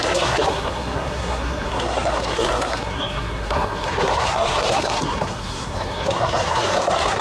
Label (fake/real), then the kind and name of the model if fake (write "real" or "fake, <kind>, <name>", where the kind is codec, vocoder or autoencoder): fake, codec, SNAC